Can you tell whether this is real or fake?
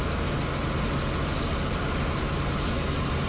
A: real